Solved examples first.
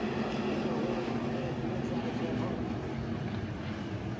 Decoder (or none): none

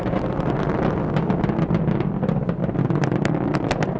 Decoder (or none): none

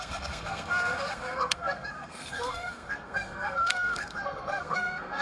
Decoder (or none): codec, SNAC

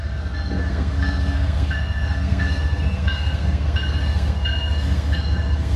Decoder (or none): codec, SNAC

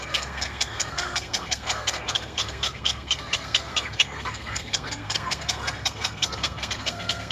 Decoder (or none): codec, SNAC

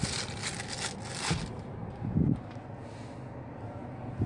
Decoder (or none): none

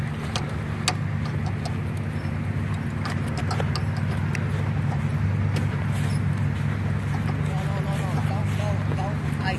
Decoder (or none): none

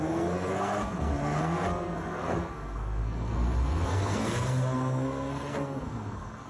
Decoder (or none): codec, SNAC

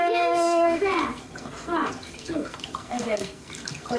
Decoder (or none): codec, SNAC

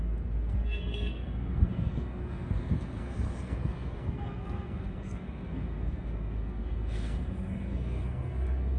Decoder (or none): codec, SNAC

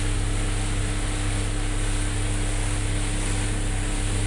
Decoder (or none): none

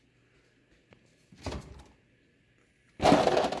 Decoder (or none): none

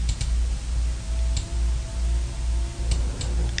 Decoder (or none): none